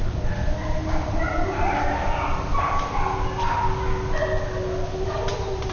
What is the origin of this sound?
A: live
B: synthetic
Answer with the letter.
A